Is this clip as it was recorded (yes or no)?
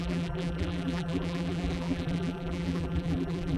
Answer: no